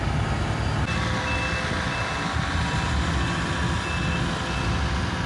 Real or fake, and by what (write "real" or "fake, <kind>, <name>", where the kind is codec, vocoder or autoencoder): real